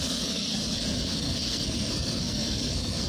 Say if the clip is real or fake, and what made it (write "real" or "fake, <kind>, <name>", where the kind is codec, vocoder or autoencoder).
fake, codec, SNAC